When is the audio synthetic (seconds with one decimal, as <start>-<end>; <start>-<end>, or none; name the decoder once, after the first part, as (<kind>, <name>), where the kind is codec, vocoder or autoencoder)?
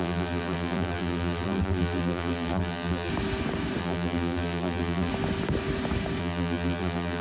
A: 0.0-3.1 (vocoder, BigVGAN v2); 3.8-5.1; 6.2-7.2